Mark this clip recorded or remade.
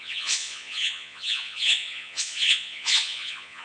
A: remade